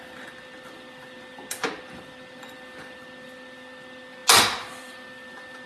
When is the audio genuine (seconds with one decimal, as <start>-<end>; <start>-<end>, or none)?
0.0-5.7